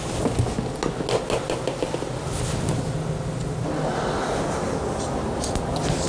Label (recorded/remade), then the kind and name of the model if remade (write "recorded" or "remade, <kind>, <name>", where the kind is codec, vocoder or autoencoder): recorded